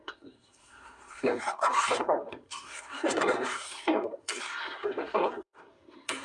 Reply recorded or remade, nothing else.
remade